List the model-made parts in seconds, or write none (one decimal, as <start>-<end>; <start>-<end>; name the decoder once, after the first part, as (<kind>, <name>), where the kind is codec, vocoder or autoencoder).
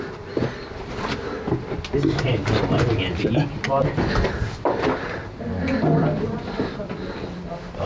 none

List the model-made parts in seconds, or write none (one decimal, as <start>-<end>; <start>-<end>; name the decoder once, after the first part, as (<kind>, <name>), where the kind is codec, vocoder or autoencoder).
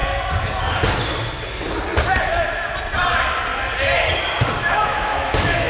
4.6-5.7 (autoencoder, DAC-VAE)